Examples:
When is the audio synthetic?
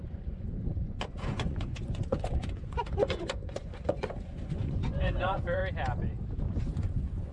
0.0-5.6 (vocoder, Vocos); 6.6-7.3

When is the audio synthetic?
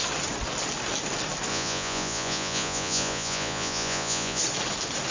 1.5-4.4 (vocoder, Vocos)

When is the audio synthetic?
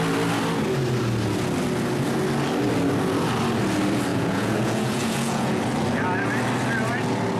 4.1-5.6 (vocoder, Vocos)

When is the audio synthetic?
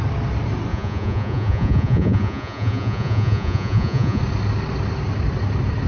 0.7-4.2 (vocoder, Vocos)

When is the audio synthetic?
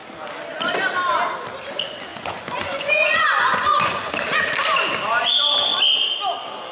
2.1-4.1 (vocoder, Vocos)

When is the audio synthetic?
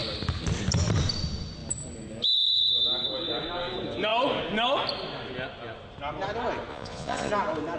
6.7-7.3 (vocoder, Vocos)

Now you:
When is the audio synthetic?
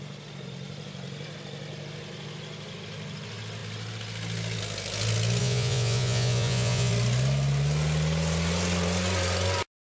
5.4-6.9 (vocoder, Vocos)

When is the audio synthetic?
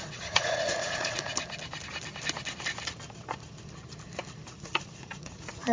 0.0-1.3 (vocoder, Vocos); 4.6-5.7